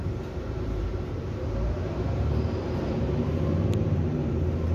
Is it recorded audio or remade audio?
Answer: remade